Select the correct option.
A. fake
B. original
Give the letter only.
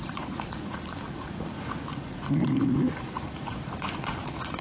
A